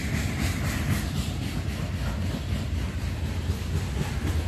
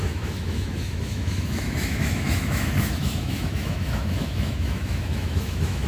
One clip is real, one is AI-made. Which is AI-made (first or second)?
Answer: second